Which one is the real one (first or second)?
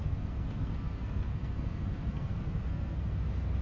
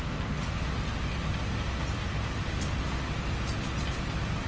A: second